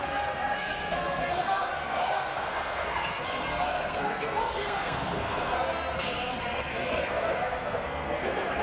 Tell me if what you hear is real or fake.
fake